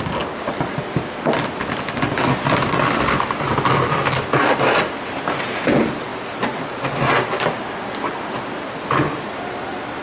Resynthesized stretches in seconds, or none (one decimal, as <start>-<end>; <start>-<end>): none